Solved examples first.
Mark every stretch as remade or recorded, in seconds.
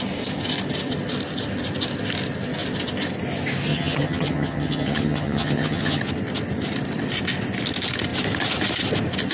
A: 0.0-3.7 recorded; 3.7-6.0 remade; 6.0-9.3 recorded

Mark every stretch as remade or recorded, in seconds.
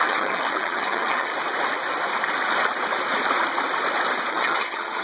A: 0.0-1.3 remade; 1.3-4.3 recorded; 4.3-5.0 remade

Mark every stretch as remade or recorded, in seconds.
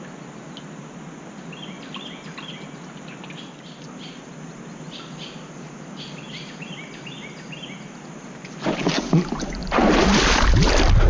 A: 0.0-11.1 recorded